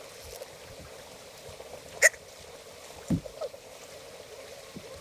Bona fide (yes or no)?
yes